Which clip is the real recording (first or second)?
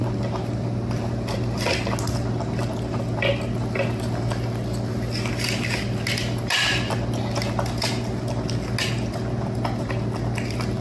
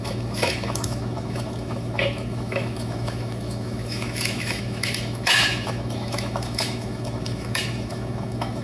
first